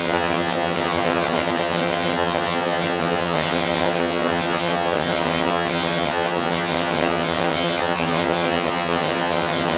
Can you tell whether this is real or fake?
fake